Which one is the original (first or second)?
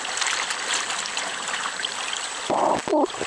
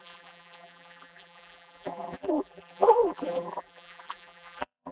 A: first